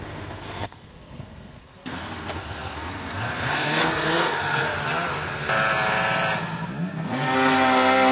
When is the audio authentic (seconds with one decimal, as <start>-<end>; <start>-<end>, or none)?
4.7-6.8